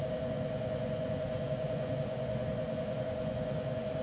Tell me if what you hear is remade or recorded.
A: remade